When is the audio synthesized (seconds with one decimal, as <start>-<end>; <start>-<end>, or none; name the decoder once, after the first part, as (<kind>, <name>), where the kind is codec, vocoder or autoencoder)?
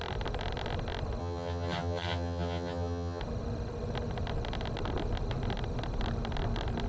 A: 1.2-3.2 (vocoder, HiFi-GAN)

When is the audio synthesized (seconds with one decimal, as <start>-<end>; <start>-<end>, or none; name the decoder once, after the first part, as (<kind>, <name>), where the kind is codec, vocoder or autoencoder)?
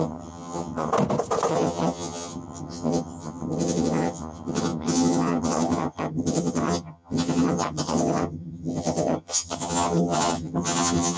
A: 0.0-0.9 (vocoder, HiFi-GAN); 1.5-11.2